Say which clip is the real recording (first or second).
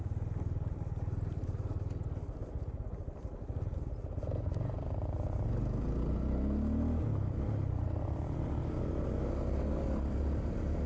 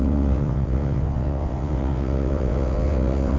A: first